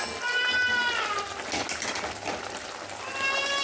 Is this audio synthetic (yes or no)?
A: no